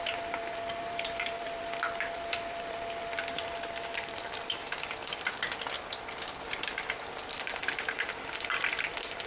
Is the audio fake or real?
fake